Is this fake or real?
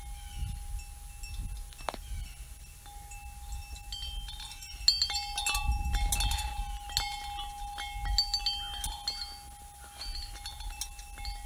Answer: real